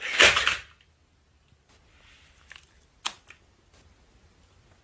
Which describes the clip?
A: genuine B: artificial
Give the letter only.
A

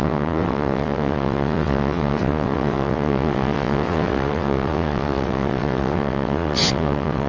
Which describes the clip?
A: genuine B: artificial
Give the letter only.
B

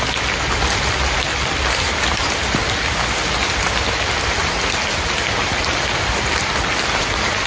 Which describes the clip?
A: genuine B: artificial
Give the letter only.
A